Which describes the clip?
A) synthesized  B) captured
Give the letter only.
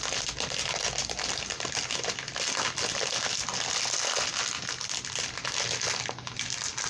B